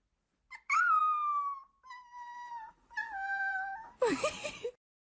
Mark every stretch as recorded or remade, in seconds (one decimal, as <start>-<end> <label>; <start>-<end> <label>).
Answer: 0.0-1.0 remade; 1.0-2.7 recorded; 2.7-3.8 remade; 3.8-5.0 recorded